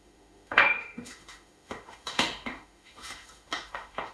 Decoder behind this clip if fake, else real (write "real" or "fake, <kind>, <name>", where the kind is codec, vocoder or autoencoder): fake, autoencoder, DAC-VAE